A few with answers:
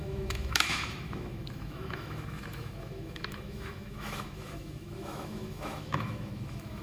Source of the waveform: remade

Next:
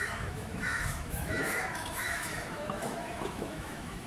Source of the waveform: remade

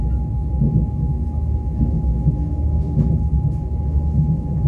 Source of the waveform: remade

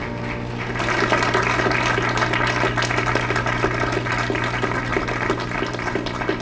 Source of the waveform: recorded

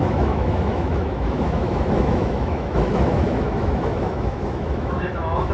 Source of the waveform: remade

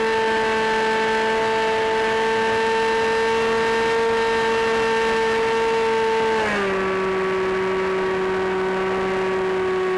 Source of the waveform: recorded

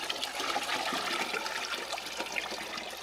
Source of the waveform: recorded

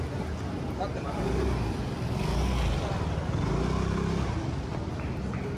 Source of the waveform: recorded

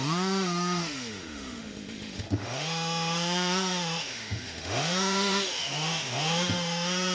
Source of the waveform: remade